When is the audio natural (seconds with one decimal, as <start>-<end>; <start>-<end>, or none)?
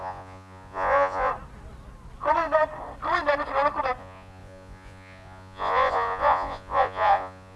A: 1.3-4.0